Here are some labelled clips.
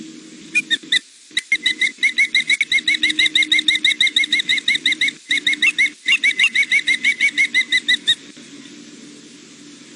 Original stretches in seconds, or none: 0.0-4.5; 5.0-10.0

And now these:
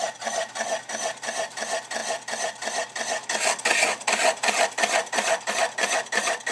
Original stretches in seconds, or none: 0.0-6.5

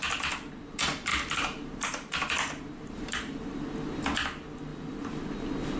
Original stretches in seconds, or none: 0.0-1.1; 3.6-4.7; 5.2-5.8

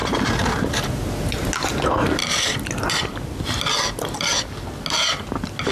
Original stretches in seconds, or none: 0.5-5.7